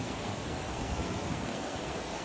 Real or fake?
fake